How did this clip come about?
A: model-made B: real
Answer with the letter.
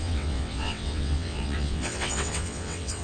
A